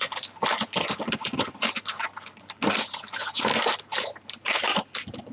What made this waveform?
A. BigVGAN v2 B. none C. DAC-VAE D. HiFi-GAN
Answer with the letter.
B